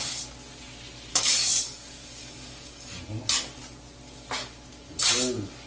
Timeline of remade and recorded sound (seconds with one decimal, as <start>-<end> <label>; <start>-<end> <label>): 0.0-1.1 recorded; 1.1-3.0 remade; 3.0-5.7 recorded